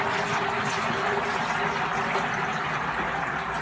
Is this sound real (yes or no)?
yes